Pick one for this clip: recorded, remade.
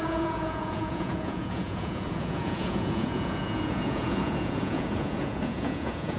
remade